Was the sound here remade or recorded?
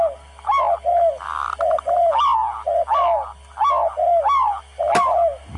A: recorded